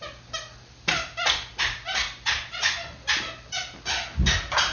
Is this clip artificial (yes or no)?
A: no